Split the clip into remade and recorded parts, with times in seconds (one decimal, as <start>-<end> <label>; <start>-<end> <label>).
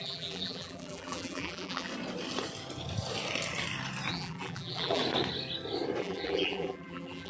0.0-1.9 remade; 1.9-4.1 recorded; 4.1-5.0 remade; 5.0-6.0 recorded; 6.0-7.3 remade